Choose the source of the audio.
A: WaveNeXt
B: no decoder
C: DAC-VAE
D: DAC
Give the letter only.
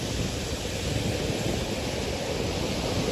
B